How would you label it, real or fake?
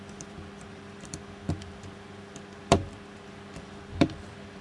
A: fake